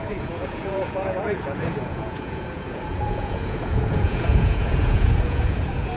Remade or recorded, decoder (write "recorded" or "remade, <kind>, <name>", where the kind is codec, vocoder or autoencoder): remade, vocoder, Vocos